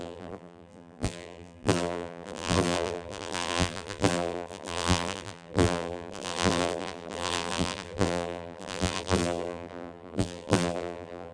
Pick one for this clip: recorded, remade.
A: remade